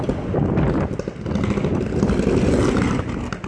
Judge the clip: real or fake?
real